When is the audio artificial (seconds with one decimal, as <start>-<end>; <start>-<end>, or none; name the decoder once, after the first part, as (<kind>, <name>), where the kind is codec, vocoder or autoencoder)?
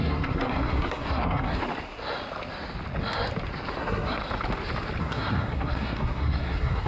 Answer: 0.0-1.6 (codec, SNAC); 3.7-4.2; 5.0-6.9